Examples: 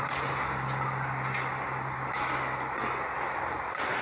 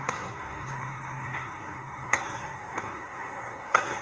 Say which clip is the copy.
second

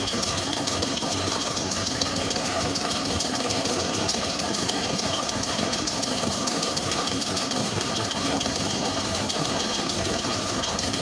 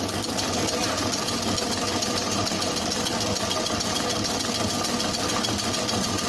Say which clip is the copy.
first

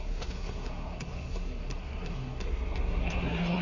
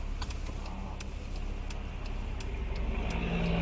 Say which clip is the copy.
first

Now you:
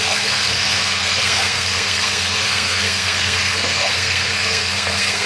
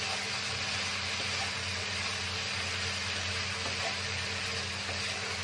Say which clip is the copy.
first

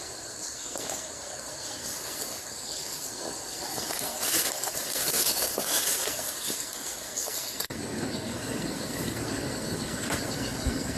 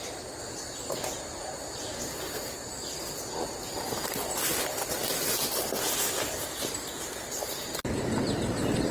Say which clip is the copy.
first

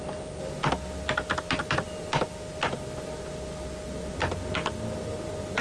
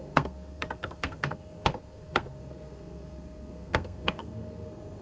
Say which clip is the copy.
second